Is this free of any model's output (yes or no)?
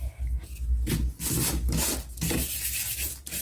yes